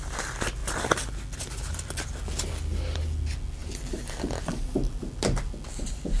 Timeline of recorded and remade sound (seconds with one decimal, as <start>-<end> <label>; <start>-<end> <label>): 0.0-6.2 recorded